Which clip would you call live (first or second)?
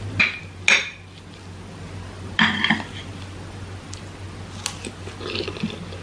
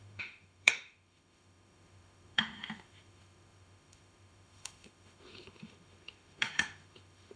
first